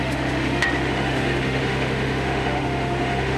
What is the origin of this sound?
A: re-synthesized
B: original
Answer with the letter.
A